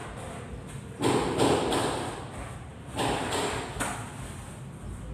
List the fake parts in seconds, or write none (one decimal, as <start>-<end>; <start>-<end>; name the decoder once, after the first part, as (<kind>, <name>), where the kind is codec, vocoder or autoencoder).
0.0-0.5 (vocoder, BigVGAN v2); 1.8-3.3